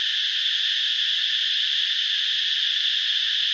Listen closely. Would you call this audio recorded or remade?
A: recorded